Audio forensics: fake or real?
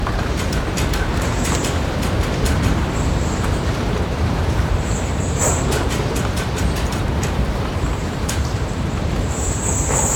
fake